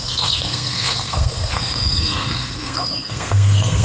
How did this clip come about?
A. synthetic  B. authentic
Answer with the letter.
A